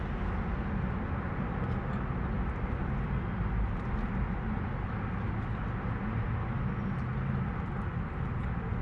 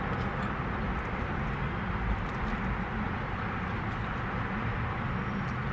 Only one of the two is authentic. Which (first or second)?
first